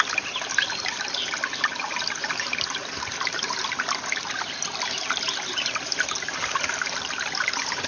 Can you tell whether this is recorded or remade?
recorded